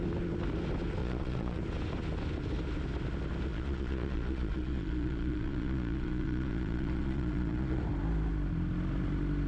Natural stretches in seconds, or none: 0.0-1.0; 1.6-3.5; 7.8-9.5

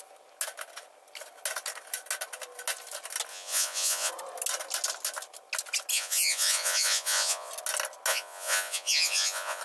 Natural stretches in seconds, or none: 0.0-3.3; 4.1-5.9; 7.5-8.1

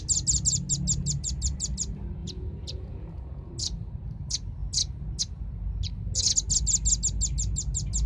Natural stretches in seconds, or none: 0.0-2.2; 3.5-8.1

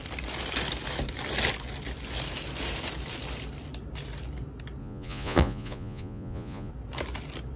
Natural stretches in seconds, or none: 0.0-4.8; 6.7-7.6

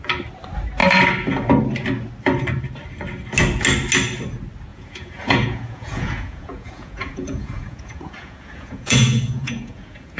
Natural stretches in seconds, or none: 0.0-4.7

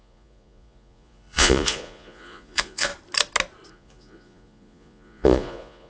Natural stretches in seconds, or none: 2.9-3.7